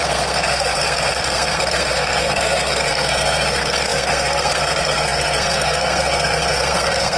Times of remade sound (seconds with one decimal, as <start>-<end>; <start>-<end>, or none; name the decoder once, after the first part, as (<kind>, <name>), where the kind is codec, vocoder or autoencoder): 0.0-7.2 (codec, SNAC)